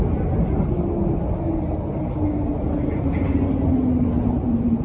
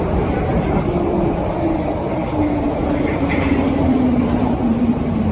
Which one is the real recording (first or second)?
first